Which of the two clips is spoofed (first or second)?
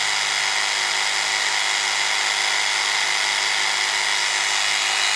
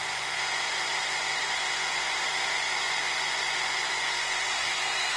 second